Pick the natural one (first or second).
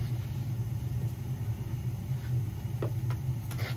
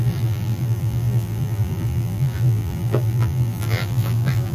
first